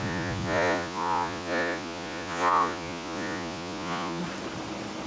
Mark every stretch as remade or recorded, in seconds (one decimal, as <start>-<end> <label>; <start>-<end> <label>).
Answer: 0.0-4.2 remade; 4.2-5.1 recorded